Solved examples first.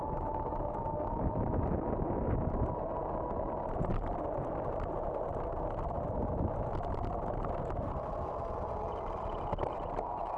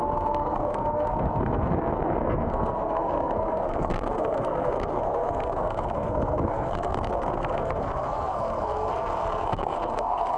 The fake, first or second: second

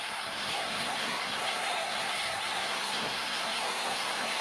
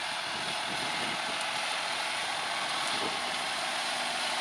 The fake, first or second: first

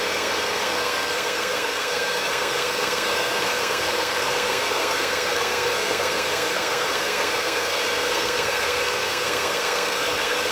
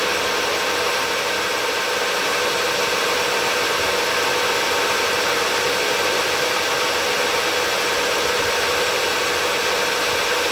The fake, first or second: first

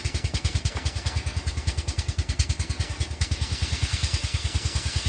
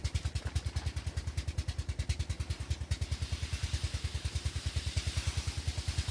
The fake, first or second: first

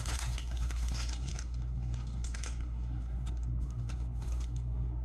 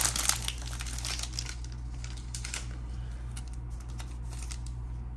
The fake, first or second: first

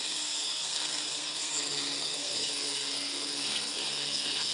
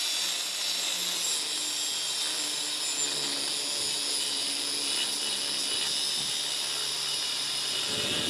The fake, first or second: first